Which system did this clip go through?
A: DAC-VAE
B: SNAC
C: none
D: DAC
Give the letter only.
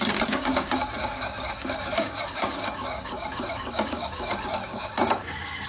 D